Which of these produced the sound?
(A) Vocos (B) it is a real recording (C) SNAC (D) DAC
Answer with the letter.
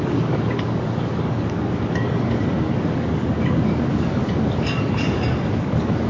D